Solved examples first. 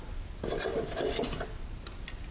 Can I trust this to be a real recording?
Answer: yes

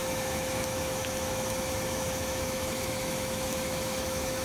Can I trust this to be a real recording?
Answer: no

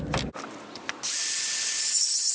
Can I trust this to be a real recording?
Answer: yes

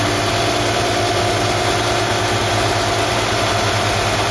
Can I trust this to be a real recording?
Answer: yes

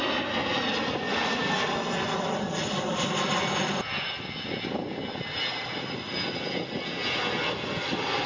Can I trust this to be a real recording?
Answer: yes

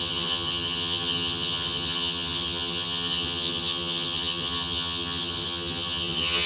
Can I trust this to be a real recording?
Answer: no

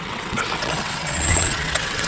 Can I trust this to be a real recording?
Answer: no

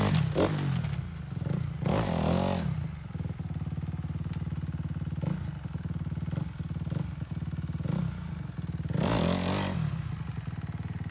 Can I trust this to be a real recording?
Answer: yes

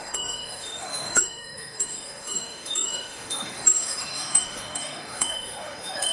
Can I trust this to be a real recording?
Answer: no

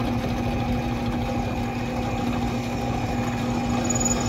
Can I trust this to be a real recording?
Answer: yes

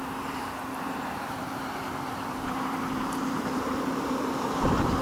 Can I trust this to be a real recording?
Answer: no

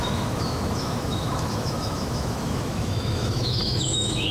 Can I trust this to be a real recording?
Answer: no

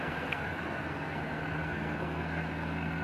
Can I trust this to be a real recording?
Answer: no